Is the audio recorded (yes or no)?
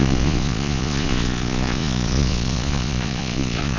no